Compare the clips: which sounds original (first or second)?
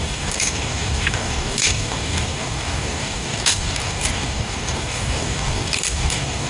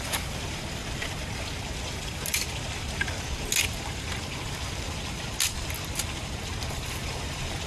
second